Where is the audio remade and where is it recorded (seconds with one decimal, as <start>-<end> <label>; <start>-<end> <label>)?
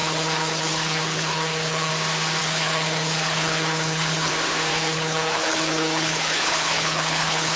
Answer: 0.0-1.9 remade; 1.9-2.4 recorded; 2.4-4.3 remade; 4.3-4.7 recorded; 4.7-7.6 remade